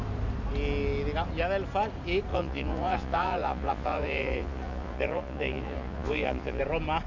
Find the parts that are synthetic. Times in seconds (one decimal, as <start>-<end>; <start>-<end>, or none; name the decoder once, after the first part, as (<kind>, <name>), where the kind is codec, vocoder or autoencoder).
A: 2.3-6.6 (vocoder, Vocos)